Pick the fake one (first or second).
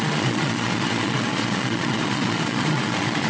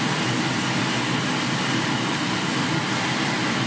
first